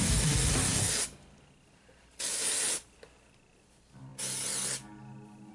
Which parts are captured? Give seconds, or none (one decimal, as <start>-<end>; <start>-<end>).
0.0-5.5